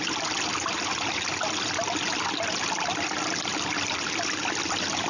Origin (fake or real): real